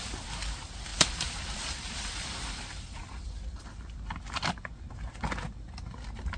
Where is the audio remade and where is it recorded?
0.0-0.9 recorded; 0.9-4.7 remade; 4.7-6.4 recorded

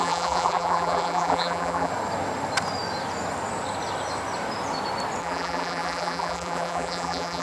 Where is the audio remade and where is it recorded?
0.0-1.9 remade; 1.9-5.2 recorded; 5.2-7.4 remade

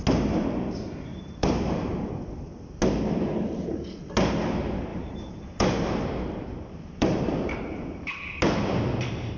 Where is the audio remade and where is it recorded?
0.0-1.1 recorded; 1.1-2.1 remade; 2.1-4.9 recorded; 4.9-8.2 remade; 8.2-9.4 recorded

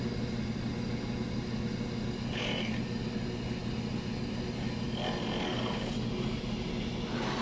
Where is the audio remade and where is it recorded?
0.0-7.4 recorded

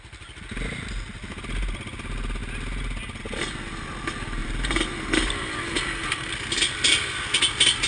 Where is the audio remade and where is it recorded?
0.0-4.4 recorded; 4.4-6.3 remade; 6.3-7.9 recorded

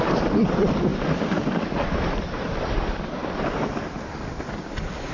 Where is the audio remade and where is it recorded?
0.0-3.2 remade; 3.2-5.1 recorded